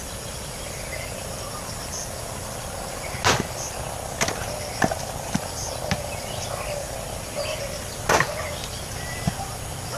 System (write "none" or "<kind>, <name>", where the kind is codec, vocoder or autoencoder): none